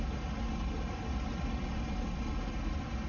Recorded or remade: recorded